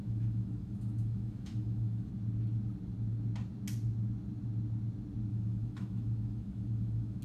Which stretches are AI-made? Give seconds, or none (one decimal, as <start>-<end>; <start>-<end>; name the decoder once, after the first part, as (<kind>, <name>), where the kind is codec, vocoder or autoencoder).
0.0-2.1 (autoencoder, DAC-VAE); 5.3-7.2